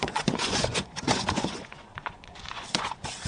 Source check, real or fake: fake